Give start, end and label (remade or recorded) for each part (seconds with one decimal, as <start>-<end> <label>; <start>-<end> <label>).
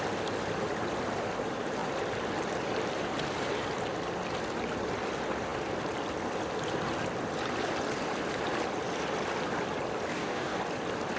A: 0.0-10.1 recorded; 10.1-10.6 remade; 10.6-11.2 recorded